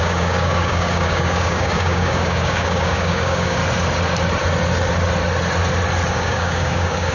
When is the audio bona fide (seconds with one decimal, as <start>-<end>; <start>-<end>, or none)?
3.6-6.1